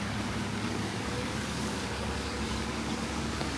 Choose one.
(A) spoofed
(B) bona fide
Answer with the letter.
A